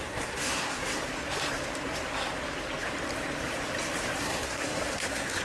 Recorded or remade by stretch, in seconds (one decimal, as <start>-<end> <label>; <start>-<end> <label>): 0.0-1.0 remade; 1.0-4.2 recorded; 4.2-5.4 remade